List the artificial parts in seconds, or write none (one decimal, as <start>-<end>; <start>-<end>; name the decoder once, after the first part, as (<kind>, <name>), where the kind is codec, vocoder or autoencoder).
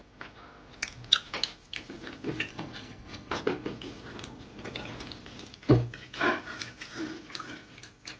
2.5-3.3 (codec, SNAC)